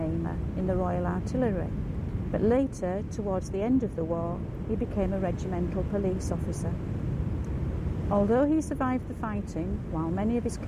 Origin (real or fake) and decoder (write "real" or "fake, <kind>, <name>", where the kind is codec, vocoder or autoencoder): real